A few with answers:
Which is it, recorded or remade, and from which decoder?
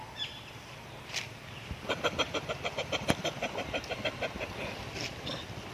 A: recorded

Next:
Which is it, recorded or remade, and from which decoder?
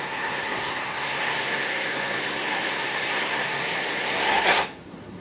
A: remade, codec, SNAC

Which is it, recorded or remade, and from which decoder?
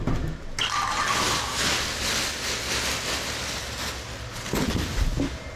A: recorded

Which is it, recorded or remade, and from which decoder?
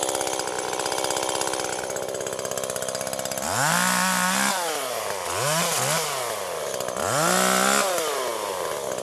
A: recorded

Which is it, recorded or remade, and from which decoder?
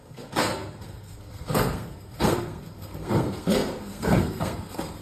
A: remade, codec, SNAC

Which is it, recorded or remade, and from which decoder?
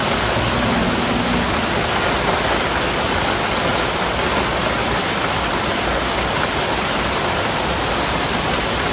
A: recorded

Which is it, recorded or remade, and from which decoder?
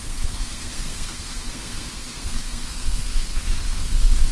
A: remade, codec, SNAC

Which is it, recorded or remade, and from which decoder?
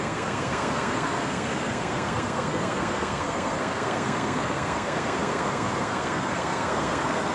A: remade, codec, SNAC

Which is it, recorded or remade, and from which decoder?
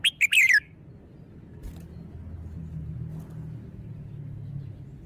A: recorded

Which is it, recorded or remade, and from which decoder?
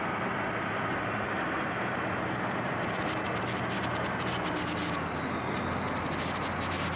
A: recorded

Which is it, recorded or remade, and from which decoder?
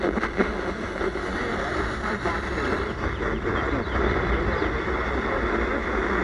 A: recorded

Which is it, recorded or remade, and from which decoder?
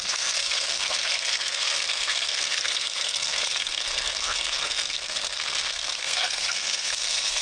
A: remade, codec, SNAC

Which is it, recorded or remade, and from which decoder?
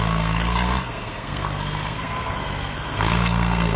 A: remade, codec, SNAC